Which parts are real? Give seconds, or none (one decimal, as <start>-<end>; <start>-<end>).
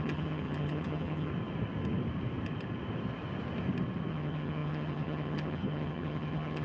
1.3-4.1